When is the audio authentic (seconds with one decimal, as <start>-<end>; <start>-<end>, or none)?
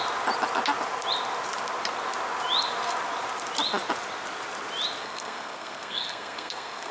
0.0-5.0